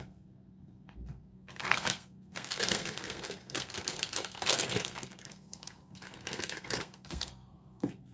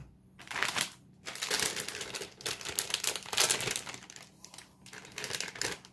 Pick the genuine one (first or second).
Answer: second